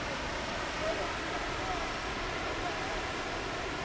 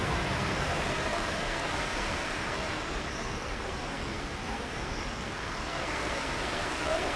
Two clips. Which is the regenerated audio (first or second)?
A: second